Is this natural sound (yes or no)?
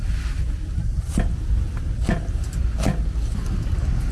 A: yes